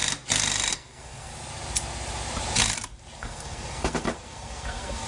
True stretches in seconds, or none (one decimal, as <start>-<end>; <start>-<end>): 0.0-0.7; 1.3-3.2